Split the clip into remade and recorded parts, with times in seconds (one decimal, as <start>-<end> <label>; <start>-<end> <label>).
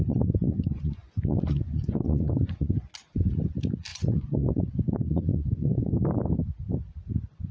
0.0-2.9 remade; 2.9-3.9 recorded; 3.9-5.9 remade; 5.9-7.5 recorded